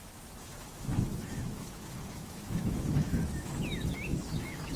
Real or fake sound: fake